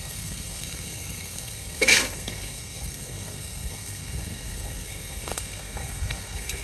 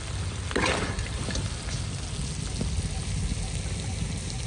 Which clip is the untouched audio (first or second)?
second